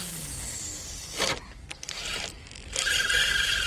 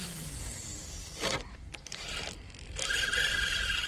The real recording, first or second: first